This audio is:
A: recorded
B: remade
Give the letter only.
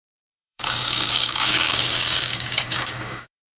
B